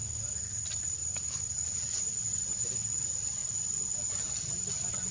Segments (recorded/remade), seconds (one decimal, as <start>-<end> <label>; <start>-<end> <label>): 0.0-0.6 remade; 0.6-5.1 recorded